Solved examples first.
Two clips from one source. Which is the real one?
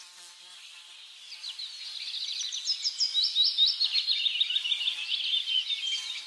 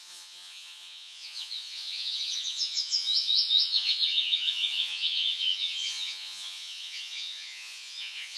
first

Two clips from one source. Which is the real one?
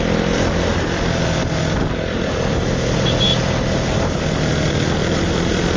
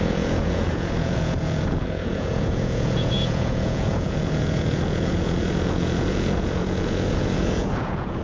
first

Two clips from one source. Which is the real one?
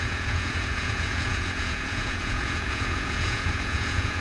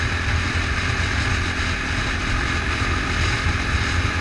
second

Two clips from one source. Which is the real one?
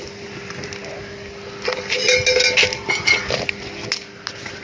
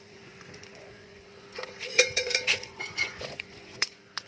first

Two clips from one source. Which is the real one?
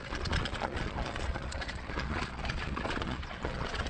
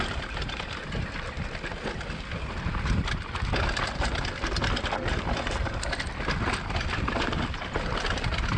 second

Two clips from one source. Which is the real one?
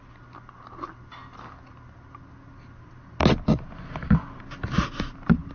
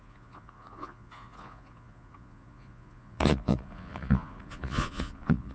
first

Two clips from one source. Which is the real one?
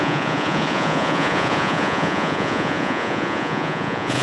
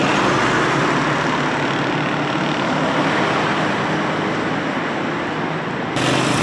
second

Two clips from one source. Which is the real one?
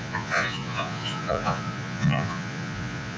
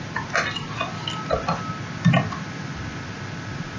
second